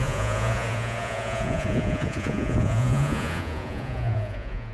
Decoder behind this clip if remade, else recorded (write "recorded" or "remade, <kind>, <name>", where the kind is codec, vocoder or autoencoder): remade, vocoder, Vocos